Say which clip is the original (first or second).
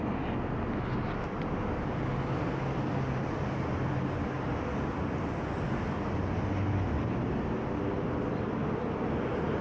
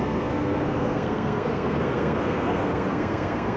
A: first